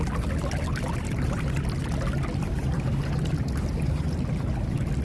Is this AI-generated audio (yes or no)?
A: no